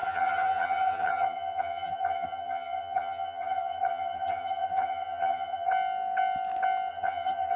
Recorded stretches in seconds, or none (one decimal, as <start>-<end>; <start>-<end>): 5.7-6.9